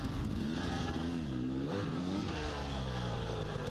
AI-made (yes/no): yes